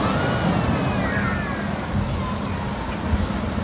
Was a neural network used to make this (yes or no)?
no